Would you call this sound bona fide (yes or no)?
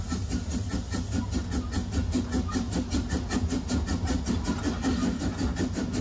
yes